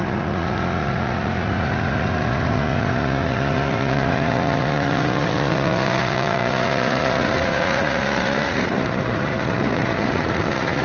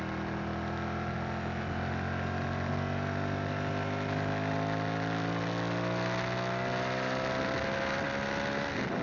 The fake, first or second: first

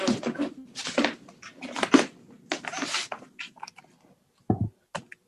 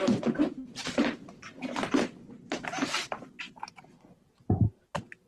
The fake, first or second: second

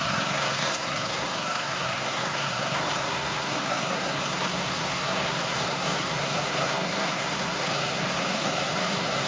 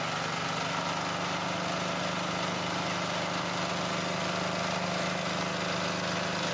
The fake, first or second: first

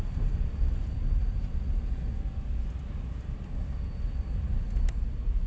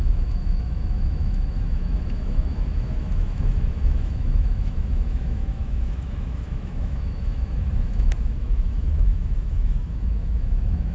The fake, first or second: second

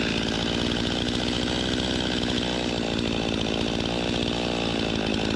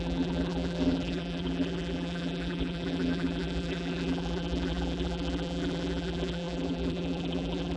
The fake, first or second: second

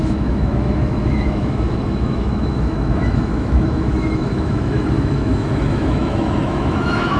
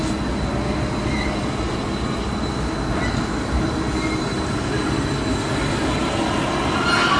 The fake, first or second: first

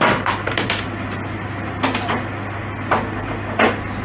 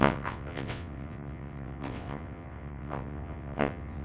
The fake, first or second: second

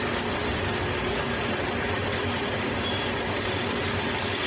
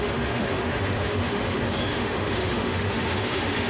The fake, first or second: second